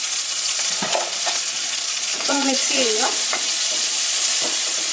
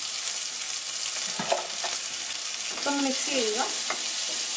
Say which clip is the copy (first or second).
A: first